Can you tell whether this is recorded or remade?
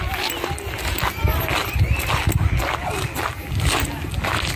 recorded